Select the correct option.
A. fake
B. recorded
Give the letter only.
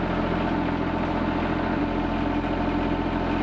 B